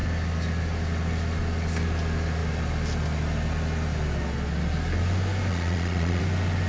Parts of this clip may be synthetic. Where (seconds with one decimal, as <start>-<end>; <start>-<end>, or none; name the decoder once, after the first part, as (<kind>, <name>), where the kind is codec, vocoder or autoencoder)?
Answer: 5.5-6.2 (vocoder, Vocos)